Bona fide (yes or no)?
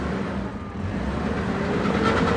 yes